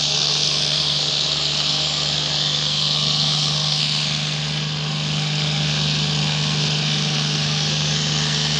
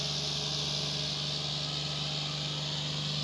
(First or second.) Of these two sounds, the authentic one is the second